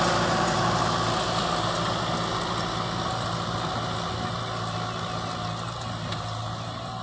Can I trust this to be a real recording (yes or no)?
yes